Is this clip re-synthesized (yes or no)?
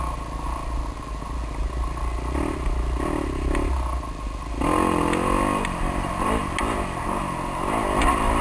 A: no